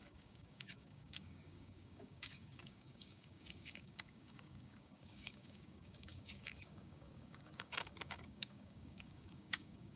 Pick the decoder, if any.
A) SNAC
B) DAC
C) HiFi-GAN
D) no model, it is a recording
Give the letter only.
B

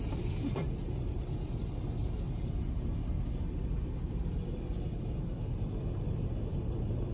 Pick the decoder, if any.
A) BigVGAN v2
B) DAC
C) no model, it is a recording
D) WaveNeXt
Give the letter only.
C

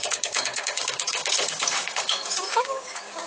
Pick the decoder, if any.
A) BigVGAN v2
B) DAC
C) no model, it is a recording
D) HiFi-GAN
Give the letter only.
B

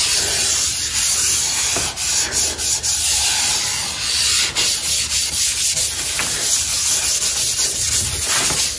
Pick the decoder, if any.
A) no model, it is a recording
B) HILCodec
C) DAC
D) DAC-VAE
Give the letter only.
A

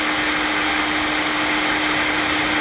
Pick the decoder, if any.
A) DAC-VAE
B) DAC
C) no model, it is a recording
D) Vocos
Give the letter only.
C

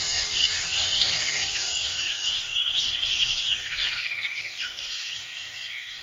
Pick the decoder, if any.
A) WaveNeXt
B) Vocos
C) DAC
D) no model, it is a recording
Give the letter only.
C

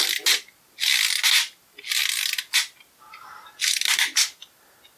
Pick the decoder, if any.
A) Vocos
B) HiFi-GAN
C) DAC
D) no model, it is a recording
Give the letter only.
D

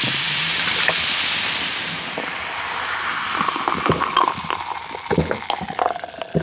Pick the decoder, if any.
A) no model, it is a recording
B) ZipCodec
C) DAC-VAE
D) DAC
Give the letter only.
A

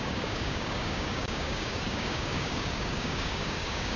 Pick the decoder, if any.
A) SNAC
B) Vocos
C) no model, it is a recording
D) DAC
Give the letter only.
D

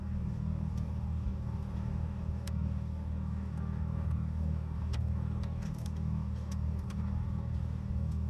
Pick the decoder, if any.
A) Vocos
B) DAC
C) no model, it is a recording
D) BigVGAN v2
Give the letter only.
B